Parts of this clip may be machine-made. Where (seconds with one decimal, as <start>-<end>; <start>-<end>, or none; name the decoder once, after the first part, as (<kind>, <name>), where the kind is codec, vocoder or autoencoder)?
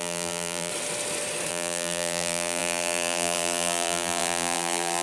0.0-0.7 (vocoder, BigVGAN v2); 1.5-5.0